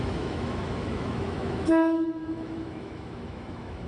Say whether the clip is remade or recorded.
remade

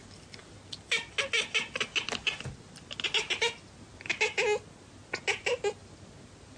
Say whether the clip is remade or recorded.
recorded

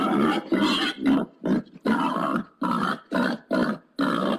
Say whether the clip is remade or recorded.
recorded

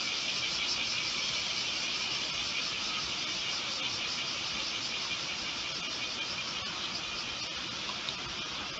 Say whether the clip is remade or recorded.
recorded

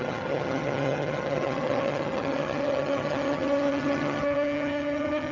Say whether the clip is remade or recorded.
remade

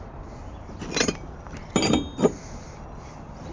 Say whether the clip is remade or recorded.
recorded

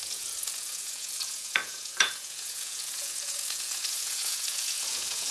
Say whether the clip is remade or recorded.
remade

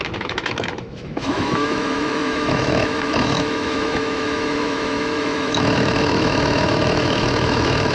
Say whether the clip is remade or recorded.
remade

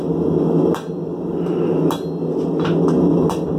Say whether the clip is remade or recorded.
recorded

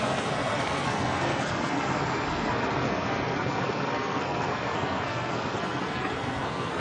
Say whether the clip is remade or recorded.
remade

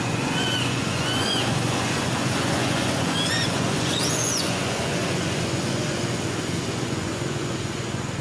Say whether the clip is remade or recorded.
remade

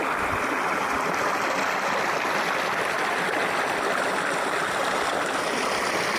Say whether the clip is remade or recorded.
recorded